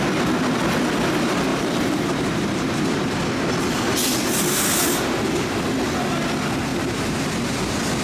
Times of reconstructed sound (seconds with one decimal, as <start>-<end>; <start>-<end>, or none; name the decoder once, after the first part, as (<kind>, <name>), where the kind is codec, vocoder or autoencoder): 1.5-3.1 (vocoder, BigVGAN v2); 6.7-7.3